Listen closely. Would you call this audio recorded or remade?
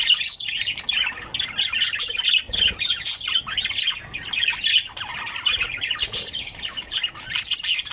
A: recorded